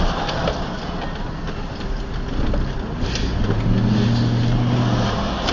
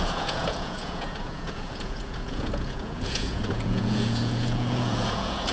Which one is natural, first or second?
first